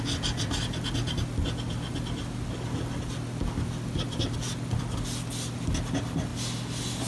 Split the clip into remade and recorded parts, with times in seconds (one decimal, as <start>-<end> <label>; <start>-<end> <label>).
0.0-7.1 recorded